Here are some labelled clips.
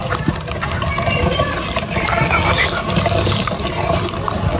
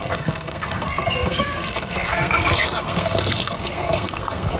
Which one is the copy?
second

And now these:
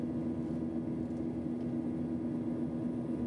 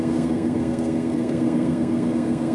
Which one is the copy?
second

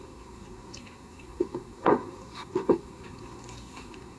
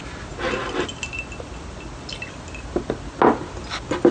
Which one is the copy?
first